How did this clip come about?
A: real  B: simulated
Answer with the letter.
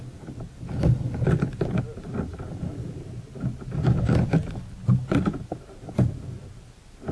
A